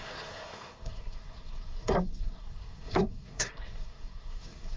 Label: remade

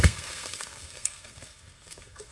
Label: remade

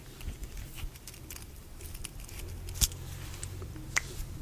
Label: remade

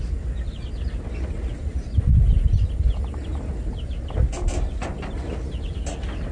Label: recorded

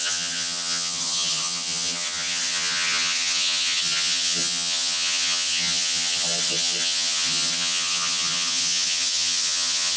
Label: remade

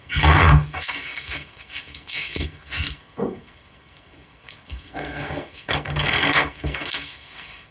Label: remade